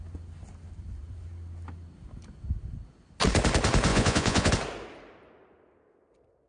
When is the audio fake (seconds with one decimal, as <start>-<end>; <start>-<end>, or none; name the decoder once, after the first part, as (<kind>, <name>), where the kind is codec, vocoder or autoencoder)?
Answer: 3.9-4.5 (vocoder, Vocos)